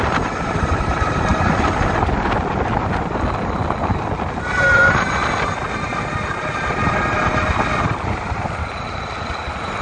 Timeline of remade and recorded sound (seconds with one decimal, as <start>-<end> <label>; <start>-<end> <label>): 0.0-9.8 recorded